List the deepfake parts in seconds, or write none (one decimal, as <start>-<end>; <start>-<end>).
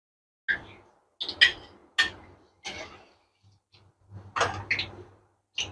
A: none